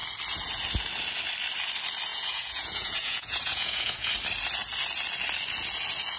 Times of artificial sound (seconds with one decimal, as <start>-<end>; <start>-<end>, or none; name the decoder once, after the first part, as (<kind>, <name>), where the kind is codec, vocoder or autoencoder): 2.1-4.1 (vocoder, Vocos)